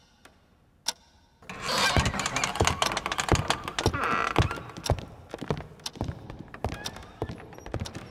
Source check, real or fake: real